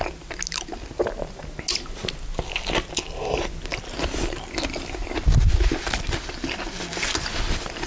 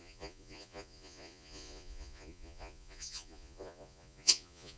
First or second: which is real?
first